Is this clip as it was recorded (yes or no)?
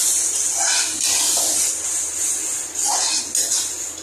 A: yes